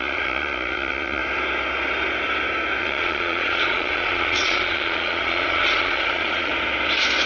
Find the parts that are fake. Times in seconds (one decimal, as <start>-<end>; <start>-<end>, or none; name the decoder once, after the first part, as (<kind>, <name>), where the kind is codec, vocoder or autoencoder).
0.0-1.2 (vocoder, Vocos); 2.8-6.5